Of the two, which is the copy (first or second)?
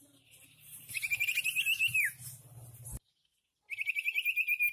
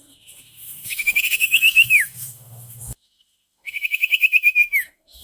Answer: second